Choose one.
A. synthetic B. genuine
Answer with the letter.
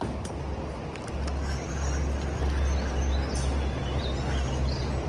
B